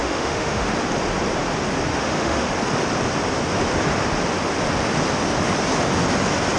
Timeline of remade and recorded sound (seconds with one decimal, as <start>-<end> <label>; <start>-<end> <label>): 0.0-0.7 remade; 0.7-1.9 recorded; 1.9-2.5 remade; 2.5-6.6 recorded